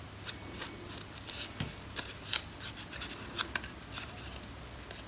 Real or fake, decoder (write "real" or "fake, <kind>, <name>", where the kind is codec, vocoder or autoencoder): real